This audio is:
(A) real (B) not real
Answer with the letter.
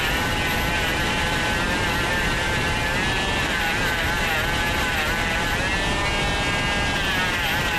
A